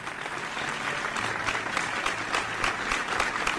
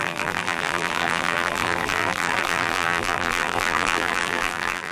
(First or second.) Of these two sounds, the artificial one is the second